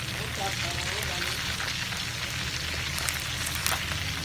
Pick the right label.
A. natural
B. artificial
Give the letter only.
A